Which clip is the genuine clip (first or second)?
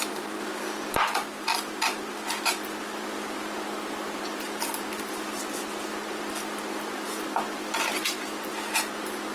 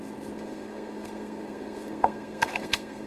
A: first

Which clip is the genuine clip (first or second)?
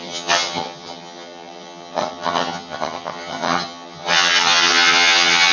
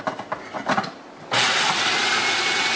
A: second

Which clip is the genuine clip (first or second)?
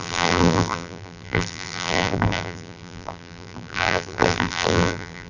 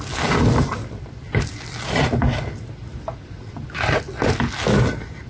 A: second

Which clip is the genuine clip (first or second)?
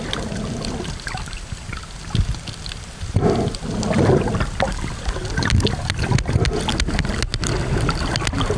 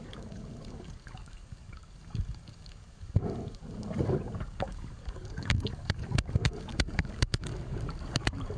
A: first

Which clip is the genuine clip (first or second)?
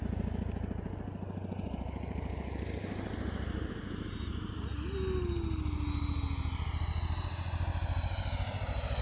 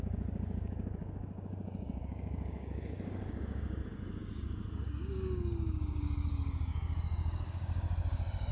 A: first